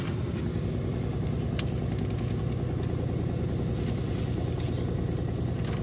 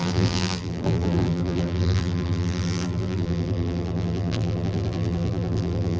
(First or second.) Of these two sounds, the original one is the first